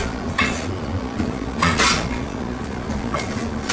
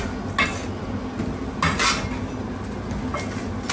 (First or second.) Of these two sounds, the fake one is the first